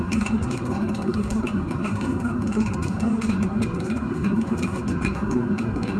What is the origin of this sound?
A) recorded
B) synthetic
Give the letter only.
B